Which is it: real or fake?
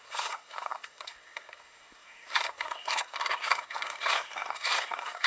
fake